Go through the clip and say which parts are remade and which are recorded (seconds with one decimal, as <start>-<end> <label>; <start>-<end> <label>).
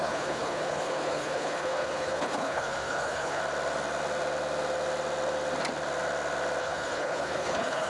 0.0-3.4 remade; 3.4-6.6 recorded; 6.6-7.9 remade